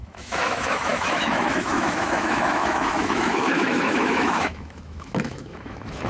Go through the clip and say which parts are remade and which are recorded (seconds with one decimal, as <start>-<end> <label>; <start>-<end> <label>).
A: 0.0-6.1 remade